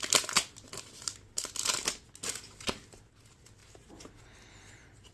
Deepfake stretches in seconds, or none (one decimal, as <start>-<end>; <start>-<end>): 3.6-4.2